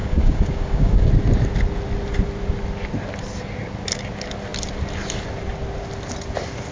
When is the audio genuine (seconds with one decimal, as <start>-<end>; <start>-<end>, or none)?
1.1-6.7